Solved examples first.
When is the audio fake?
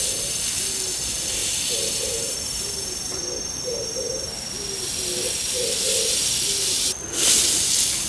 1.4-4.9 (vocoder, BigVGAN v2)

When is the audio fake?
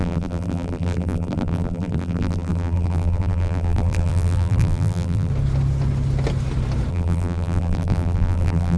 0.0-5.3 (vocoder, BigVGAN v2); 6.9-8.8